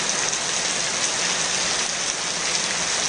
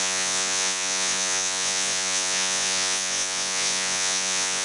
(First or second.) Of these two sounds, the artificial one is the second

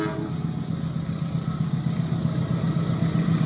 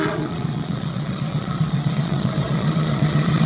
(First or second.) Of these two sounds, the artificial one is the second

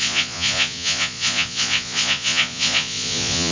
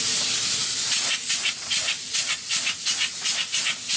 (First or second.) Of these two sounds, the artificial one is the first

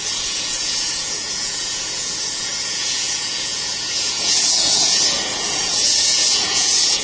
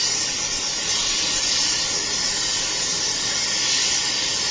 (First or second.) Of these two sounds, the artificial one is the first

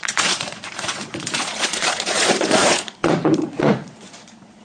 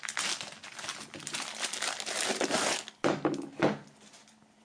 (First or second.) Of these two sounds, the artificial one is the first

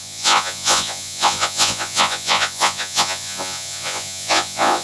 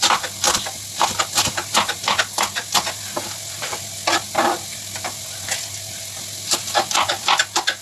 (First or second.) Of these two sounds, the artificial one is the first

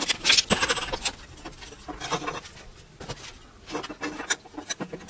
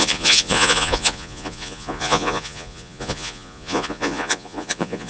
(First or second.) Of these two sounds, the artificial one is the second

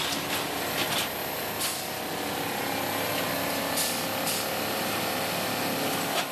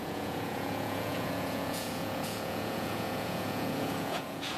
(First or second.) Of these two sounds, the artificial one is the second